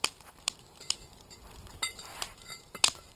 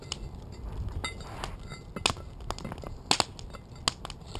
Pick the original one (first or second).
second